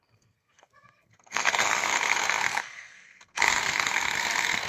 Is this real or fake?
fake